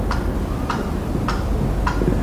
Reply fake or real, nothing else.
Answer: real